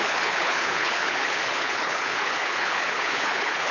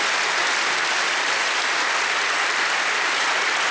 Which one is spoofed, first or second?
first